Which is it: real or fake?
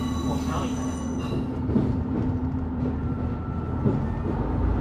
real